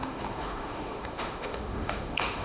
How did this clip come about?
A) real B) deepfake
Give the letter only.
B